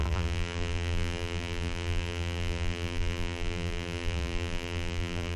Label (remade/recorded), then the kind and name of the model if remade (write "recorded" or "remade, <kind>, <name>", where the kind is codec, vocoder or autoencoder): remade, vocoder, BigVGAN v2